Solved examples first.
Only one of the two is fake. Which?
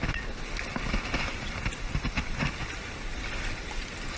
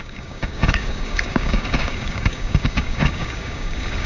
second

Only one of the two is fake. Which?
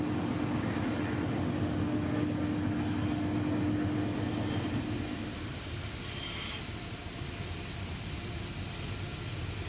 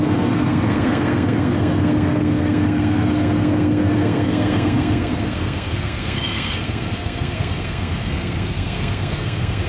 second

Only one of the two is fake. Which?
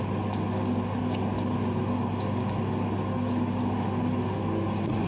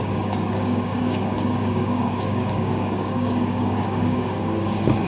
second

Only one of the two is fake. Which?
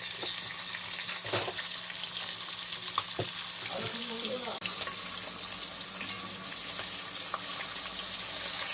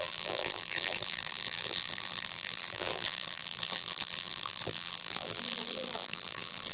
second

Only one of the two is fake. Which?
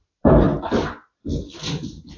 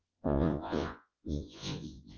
second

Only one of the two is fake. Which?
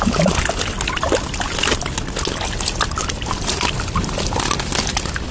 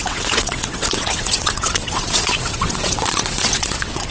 second